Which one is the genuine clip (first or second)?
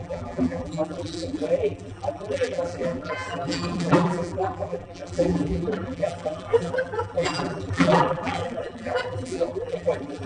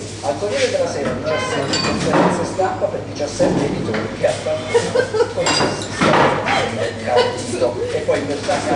second